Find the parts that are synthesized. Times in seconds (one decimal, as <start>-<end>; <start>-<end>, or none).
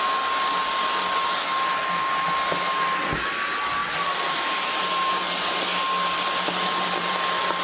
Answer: none